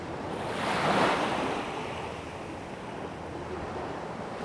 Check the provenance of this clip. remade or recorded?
recorded